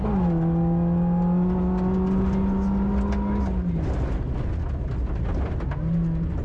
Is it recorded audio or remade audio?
recorded